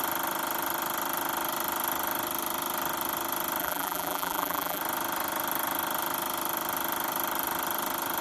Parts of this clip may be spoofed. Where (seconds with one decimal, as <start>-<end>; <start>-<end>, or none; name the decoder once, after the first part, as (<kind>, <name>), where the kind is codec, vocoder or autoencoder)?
3.6-4.8 (vocoder, BigVGAN v2)